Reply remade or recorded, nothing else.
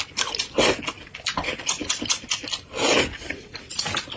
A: recorded